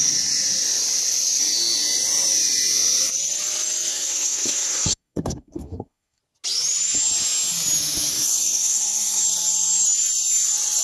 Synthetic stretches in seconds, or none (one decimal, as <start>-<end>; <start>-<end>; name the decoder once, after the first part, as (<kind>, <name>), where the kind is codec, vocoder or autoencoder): 3.9-6.2 (codec, SNAC); 8.1-9.2